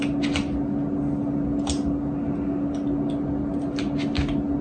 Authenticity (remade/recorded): recorded